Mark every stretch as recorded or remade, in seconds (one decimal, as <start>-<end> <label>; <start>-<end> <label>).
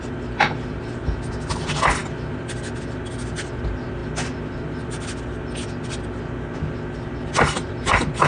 0.0-8.3 recorded